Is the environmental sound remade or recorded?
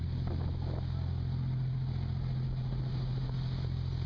recorded